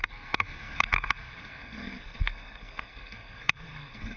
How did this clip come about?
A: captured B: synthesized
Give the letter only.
B